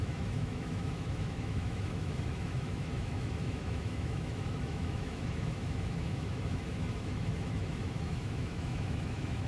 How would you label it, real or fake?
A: fake